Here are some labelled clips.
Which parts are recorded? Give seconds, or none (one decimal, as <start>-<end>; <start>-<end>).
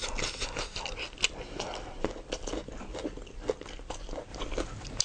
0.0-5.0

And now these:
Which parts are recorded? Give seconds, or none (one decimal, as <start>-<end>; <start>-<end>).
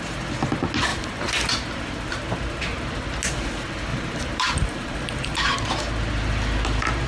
0.0-0.9; 2.8-3.9; 5.8-7.1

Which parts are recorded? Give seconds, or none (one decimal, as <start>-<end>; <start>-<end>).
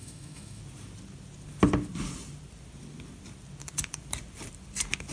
0.6-5.1